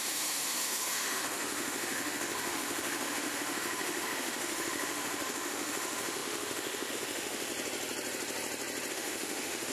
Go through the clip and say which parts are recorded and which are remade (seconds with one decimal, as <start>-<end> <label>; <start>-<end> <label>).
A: 0.0-7.5 remade; 7.5-8.9 recorded; 8.9-9.7 remade